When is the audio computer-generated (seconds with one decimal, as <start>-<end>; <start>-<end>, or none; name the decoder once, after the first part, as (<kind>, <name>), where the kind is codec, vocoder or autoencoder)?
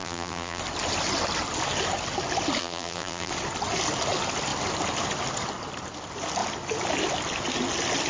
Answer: 0.0-0.6 (vocoder, BigVGAN v2); 2.6-3.3